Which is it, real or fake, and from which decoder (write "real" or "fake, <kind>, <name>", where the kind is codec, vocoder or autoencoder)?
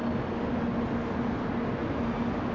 real